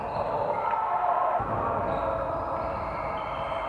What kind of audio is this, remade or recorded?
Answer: recorded